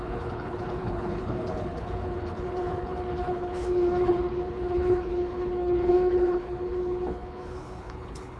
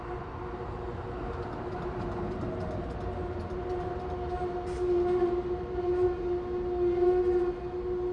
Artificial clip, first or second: first